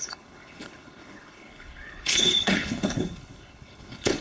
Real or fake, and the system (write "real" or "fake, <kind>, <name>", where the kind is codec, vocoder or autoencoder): fake, codec, HILCodec